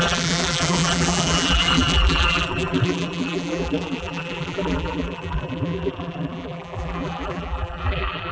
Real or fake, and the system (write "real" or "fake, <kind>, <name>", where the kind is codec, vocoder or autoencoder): fake, vocoder, BigVGAN v2